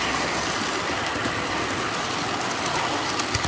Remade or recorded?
recorded